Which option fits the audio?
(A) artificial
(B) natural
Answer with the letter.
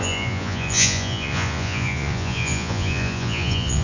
A